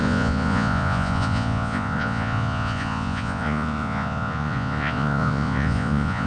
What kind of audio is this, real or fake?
fake